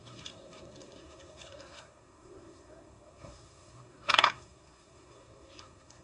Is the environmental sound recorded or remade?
remade